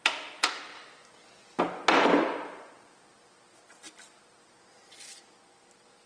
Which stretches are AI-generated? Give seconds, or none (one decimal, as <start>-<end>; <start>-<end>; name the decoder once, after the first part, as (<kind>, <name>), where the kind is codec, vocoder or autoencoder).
none